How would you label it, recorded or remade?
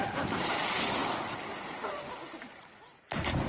recorded